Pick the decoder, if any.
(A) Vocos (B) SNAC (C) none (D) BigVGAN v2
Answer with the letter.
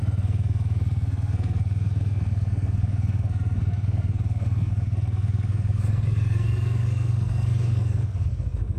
B